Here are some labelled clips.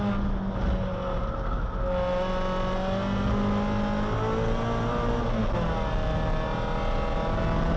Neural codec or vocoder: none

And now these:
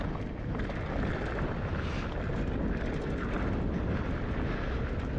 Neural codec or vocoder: none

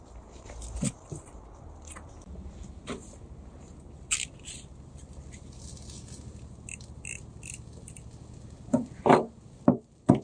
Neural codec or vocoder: none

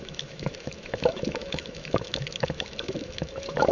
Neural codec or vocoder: autoencoder, DAC-VAE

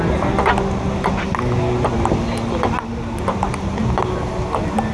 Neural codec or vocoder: none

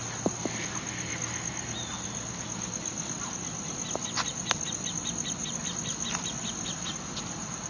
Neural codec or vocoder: none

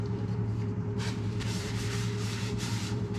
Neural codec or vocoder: vocoder, BigVGAN v2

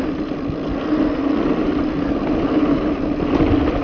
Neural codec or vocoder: none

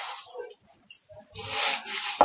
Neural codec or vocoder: none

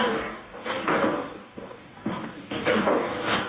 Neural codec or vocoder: codec, DAC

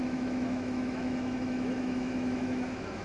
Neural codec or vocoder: autoencoder, DAC-VAE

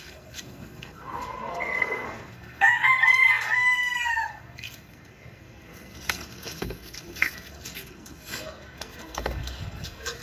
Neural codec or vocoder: codec, SNAC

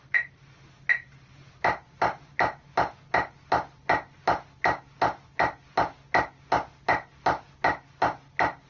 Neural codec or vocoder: none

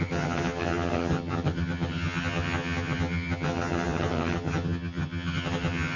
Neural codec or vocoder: vocoder, HiFi-GAN